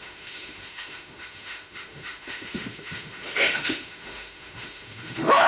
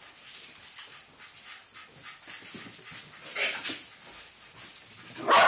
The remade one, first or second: first